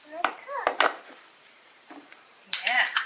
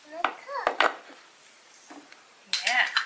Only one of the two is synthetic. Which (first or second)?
first